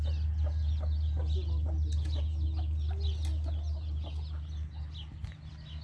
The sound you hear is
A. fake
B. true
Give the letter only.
B